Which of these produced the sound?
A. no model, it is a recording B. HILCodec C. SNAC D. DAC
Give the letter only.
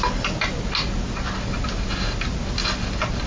A